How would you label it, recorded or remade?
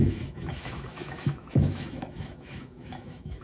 remade